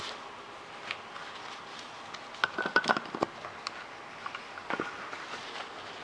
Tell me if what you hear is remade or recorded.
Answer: recorded